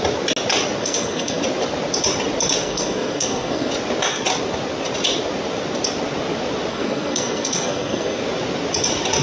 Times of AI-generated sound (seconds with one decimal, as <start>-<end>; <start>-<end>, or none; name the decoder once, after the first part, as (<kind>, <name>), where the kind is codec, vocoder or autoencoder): 0.8-1.4 (codec, SNAC); 2.6-3.7; 6.7-8.2